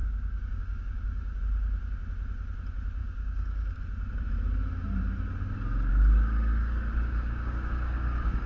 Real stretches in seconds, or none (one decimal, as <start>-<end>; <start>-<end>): 1.4-3.0; 3.8-5.9

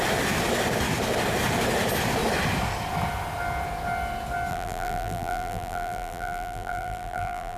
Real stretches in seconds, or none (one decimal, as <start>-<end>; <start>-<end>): 0.0-4.5

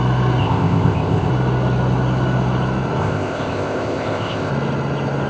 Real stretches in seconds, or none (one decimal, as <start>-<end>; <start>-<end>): 0.0-0.4; 1.3-3.0; 4.5-5.3

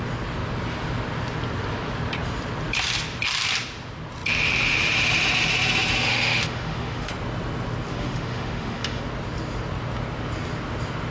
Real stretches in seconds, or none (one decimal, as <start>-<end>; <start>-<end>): 0.0-6.0; 7.1-7.9; 9.0-11.1

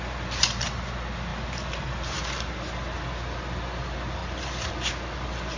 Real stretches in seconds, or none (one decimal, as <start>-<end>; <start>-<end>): 0.0-1.3; 2.2-4.2; 4.7-5.6